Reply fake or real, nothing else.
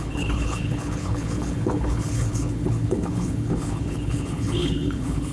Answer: fake